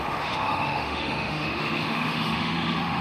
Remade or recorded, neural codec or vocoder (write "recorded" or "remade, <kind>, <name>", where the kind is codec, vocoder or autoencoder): remade, autoencoder, DAC-VAE